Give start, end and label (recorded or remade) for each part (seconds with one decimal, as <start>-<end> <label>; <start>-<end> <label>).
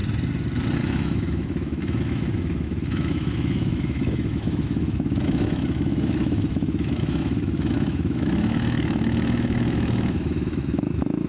0.0-0.8 recorded; 0.8-11.3 remade